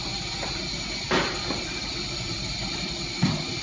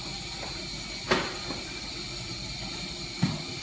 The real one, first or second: second